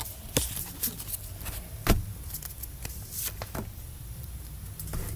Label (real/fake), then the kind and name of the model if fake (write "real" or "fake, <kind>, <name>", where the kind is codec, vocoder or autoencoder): real